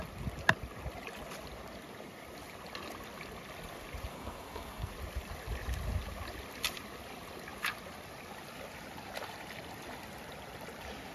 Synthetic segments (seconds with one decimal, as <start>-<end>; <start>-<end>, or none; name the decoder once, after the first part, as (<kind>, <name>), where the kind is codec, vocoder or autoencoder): 4.1-4.9 (codec, SNAC)